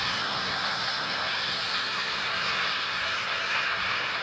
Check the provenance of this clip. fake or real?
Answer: fake